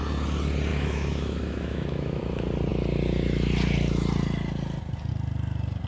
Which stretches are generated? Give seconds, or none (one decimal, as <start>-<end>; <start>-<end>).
0.7-2.2